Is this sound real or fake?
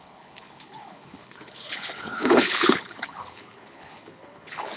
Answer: fake